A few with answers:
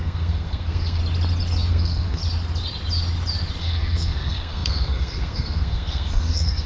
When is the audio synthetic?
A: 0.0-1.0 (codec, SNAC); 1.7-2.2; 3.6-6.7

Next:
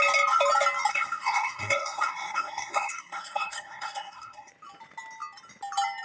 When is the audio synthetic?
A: 0.9-4.5 (codec, SNAC)

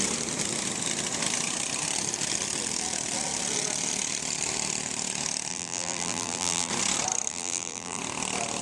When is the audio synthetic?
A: 5.5-6.7 (vocoder, BigVGAN v2); 7.3-8.0

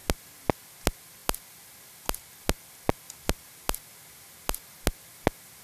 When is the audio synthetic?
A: none

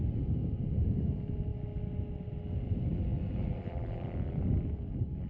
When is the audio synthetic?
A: none

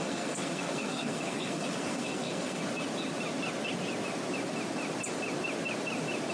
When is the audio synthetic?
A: 0.0-2.6 (codec, SNAC)

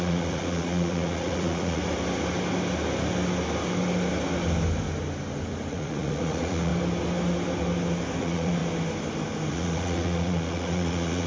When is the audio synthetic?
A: 0.0-1.8 (vocoder, Vocos); 5.7-6.7; 8.2-8.6; 9.5-11.3

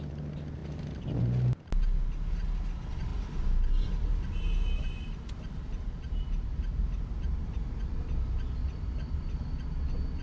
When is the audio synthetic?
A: 3.1-7.8 (vocoder, BigVGAN v2)